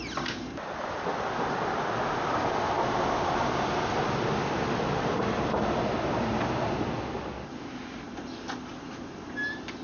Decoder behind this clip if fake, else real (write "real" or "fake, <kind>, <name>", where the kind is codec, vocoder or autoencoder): real